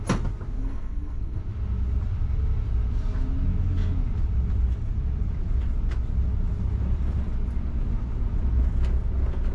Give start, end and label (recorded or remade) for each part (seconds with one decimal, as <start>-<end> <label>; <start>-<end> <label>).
0.0-0.6 recorded; 0.6-1.4 remade; 1.4-9.5 recorded